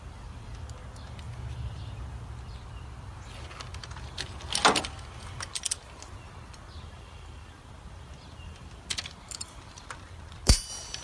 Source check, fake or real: real